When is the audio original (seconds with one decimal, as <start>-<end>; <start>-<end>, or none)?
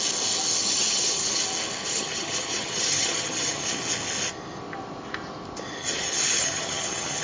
0.0-0.6; 1.4-1.8; 3.8-5.8